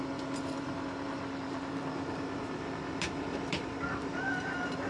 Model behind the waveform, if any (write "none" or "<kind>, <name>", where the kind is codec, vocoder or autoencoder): vocoder, BigVGAN v2